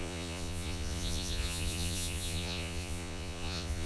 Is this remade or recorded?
remade